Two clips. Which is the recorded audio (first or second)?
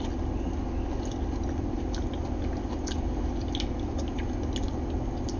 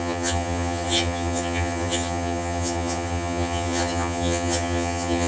first